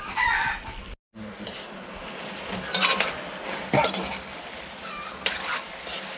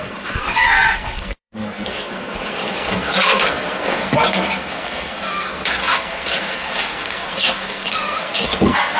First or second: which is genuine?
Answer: first